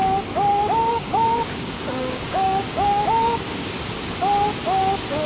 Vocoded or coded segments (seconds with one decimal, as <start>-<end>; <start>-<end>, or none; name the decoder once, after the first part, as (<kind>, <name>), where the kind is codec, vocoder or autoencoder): 0.5-3.7 (codec, DAC)